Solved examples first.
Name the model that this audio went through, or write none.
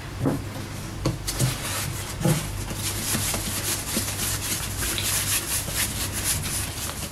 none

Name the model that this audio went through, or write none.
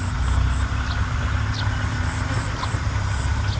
none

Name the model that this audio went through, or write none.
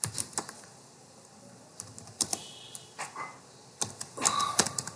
none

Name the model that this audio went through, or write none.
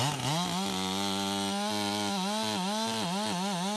none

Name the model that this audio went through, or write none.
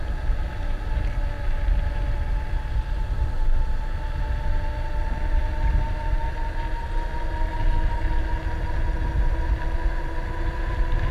none